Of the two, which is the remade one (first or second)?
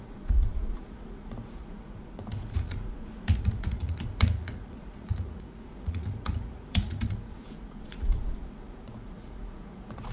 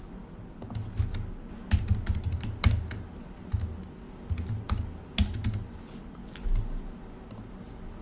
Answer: first